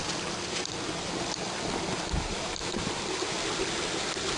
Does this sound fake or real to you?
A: real